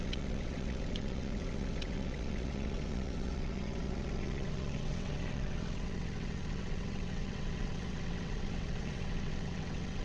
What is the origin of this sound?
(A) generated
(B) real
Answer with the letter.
A